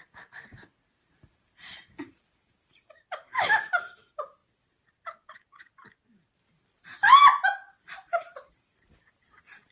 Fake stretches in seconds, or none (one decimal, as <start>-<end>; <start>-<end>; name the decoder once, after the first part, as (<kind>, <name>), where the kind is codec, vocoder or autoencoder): none

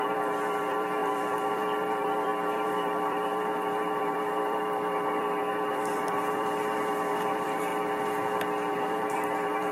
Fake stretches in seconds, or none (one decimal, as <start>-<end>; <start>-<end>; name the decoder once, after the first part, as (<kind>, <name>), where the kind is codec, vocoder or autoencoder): 0.0-7.7 (vocoder, BigVGAN v2); 8.7-9.7